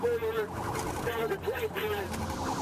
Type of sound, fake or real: fake